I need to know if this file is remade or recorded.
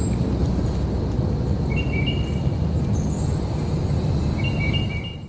recorded